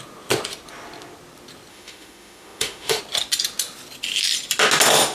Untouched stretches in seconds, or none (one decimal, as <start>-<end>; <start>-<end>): 0.0-1.7; 3.0-5.1